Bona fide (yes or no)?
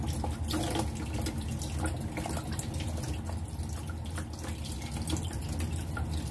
yes